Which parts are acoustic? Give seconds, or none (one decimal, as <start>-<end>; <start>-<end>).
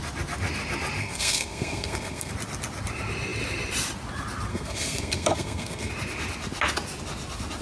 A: 0.0-1.0; 2.3-4.5; 5.9-7.6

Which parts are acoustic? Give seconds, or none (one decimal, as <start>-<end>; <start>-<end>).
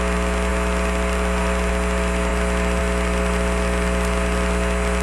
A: 0.0-5.0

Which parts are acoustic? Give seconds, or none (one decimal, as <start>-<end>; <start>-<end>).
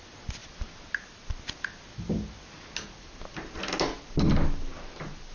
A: 0.0-5.3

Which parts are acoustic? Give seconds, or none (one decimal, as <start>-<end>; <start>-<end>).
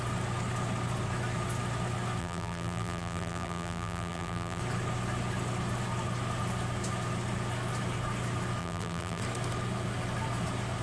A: 0.0-2.2; 4.6-8.6; 9.2-10.8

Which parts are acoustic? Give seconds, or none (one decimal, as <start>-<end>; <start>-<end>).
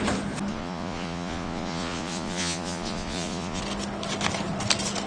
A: 0.0-0.5; 3.6-5.1